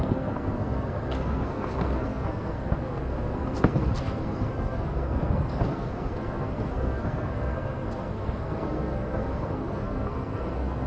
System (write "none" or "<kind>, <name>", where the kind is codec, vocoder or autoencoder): codec, SNAC